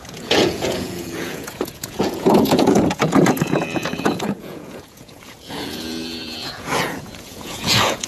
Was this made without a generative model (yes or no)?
no